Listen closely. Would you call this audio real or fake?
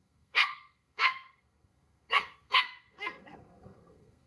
fake